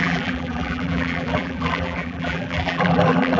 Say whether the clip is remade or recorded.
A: remade